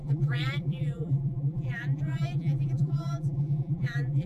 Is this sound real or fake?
fake